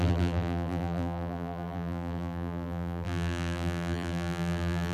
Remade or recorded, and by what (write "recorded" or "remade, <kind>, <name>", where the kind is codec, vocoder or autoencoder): remade, vocoder, BigVGAN v2